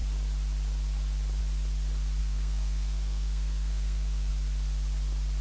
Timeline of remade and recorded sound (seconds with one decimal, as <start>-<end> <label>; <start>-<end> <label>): 0.0-2.2 recorded; 2.2-4.3 remade; 4.3-5.4 recorded